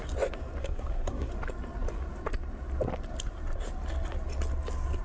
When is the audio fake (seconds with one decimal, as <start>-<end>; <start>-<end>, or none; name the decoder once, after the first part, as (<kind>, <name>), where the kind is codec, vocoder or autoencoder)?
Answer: 0.6-1.3 (codec, SNAC)